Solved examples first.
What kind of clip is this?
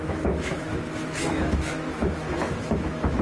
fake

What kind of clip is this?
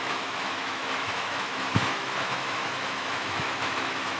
fake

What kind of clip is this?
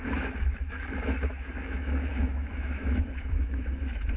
fake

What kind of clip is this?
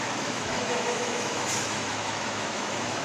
fake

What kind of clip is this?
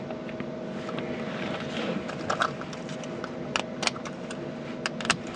real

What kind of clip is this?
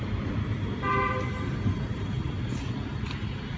real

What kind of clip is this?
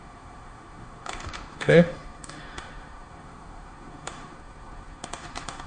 fake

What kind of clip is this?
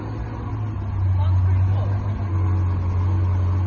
real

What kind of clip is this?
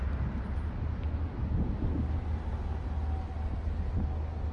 real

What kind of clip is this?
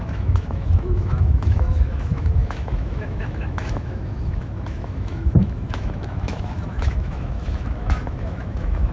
fake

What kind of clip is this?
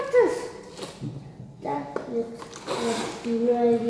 real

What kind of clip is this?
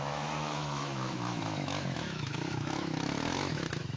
fake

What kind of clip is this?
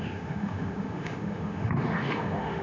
fake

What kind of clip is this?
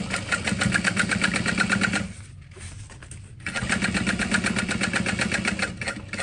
real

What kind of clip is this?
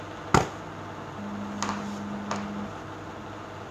real